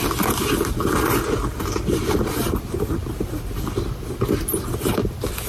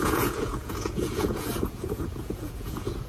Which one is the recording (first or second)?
first